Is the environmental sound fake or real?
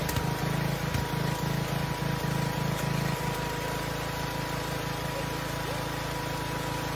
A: real